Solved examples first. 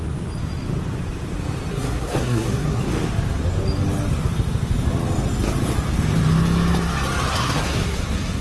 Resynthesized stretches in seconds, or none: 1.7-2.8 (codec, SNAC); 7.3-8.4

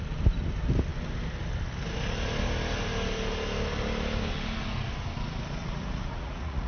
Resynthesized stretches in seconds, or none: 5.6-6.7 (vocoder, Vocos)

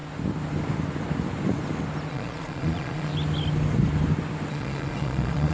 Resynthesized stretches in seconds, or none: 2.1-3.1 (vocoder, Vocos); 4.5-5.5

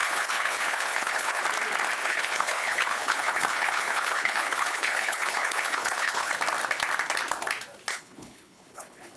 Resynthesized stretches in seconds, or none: 0.0-1.4 (codec, HILCodec); 2.0-6.3; 7.9-9.2

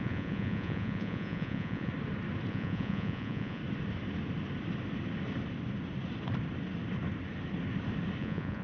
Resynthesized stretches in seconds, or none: 0.0-1.9 (vocoder, Vocos); 2.5-3.6; 8.2-8.6

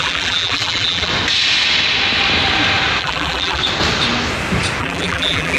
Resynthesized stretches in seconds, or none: 0.0-1.1 (vocoder, BigVGAN v2); 3.0-3.6; 4.8-5.6

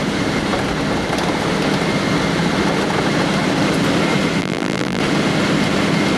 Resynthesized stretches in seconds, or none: 4.4-5.0 (vocoder, BigVGAN v2)